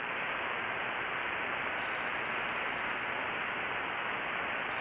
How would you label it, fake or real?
real